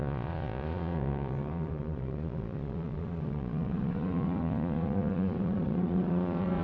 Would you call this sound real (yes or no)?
no